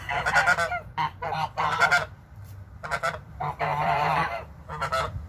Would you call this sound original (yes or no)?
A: no